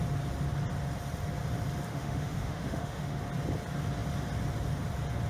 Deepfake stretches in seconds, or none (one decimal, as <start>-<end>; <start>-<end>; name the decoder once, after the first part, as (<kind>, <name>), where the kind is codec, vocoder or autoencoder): 1.9-3.2 (autoencoder, DAC-VAE)